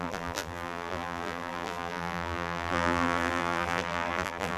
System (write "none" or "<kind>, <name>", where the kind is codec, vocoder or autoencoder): vocoder, BigVGAN v2